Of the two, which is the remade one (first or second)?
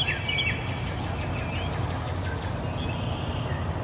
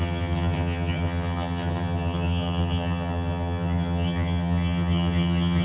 second